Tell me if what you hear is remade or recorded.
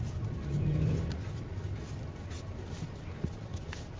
recorded